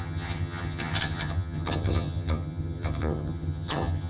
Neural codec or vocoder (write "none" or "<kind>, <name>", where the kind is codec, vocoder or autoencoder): vocoder, HiFi-GAN